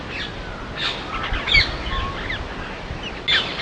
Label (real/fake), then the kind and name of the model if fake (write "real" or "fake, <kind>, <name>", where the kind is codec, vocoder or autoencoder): real